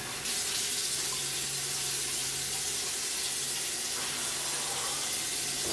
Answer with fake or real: real